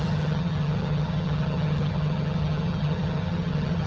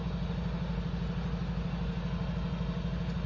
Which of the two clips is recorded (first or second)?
second